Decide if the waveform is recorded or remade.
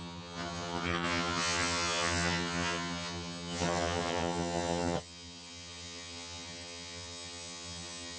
remade